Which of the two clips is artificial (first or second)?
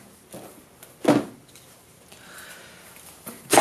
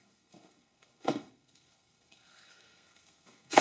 second